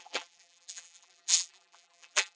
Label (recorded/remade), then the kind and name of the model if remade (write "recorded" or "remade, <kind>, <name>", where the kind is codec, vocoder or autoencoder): remade, vocoder, BigVGAN v2